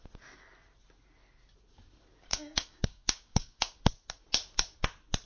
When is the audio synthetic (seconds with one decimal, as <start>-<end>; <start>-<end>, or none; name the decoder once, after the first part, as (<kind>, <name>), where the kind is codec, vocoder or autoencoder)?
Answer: 2.3-3.8 (codec, DAC)

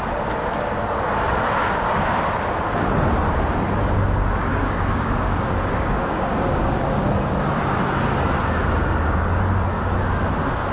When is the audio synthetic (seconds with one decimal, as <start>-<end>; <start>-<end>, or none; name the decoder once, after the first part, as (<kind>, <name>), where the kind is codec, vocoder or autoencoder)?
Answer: 1.6-2.2 (codec, DAC); 4.5-7.1

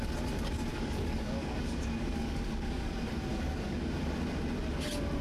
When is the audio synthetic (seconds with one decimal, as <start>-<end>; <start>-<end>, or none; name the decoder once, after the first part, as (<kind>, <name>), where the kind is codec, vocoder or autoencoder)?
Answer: 0.7-2.9 (codec, DAC); 3.3-3.9

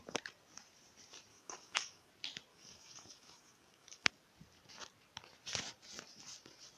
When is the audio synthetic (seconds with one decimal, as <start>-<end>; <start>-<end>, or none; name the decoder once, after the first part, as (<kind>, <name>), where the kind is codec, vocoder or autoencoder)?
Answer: 1.3-2.1 (codec, DAC); 2.5-4.1

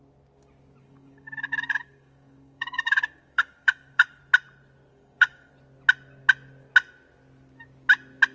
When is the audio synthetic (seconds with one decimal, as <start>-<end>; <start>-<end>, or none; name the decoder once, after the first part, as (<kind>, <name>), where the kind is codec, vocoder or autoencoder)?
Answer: 0.8-4.2 (codec, DAC); 4.9-5.5

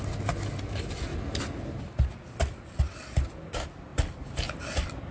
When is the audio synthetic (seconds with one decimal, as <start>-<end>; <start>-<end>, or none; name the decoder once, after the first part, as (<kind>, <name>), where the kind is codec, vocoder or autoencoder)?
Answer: none